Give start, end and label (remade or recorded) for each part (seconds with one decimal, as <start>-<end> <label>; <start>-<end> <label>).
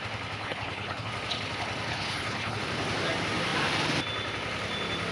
0.0-0.4 recorded; 0.4-1.1 remade; 1.1-1.9 recorded; 1.9-2.6 remade; 2.6-5.1 recorded